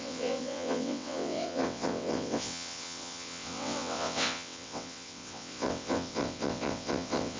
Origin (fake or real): fake